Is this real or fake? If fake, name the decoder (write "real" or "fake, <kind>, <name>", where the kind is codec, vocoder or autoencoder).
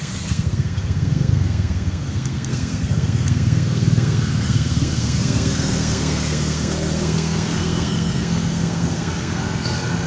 fake, codec, SNAC